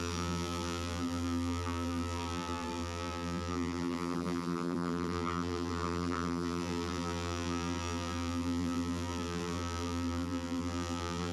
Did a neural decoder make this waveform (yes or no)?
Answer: yes